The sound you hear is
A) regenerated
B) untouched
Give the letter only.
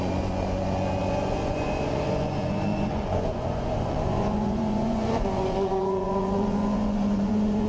A